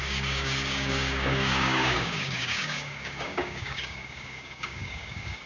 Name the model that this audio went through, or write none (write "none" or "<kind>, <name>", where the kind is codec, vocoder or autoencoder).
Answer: codec, DAC